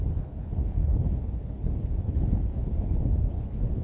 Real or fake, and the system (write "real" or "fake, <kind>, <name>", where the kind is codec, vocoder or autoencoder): fake, codec, HILCodec